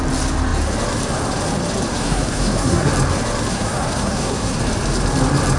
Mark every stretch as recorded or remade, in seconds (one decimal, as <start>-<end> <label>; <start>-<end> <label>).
0.0-1.9 recorded; 1.9-2.9 remade; 2.9-3.5 recorded; 3.5-4.6 remade; 4.6-5.6 recorded

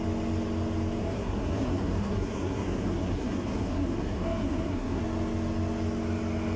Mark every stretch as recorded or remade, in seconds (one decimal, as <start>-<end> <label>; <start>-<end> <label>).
0.0-1.0 recorded; 1.0-5.0 remade; 5.0-6.6 recorded

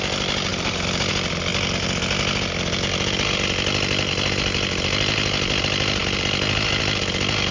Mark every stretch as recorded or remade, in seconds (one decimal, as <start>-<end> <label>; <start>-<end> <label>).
0.0-7.5 recorded